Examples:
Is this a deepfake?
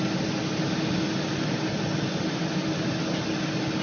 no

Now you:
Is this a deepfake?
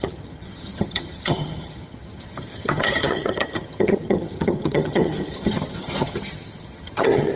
yes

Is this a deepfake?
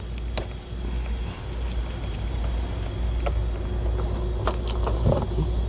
no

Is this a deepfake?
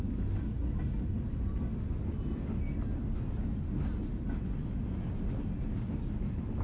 no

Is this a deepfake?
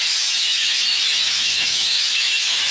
yes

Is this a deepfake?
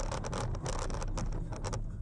no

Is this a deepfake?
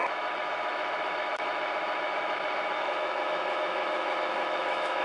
yes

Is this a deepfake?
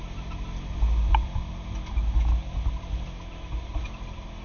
no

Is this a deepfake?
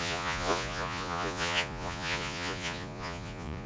yes